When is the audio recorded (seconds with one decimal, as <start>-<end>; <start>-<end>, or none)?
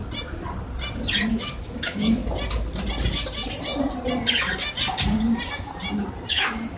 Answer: 0.0-1.3; 2.2-6.3